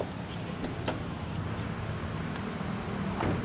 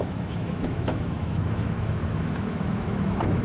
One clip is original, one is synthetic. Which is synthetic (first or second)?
second